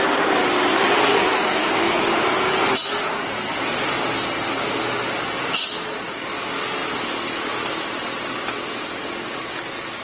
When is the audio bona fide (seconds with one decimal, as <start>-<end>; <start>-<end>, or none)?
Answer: 0.0-1.2; 2.2-10.0